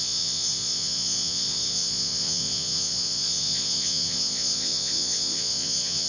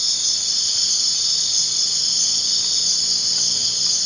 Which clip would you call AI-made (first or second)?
first